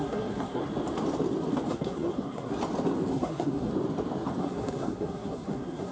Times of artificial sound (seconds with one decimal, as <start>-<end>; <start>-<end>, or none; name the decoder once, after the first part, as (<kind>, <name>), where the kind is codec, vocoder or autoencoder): 0.0-0.6 (codec, SNAC); 1.7-2.5; 3.1-3.7; 4.4-5.9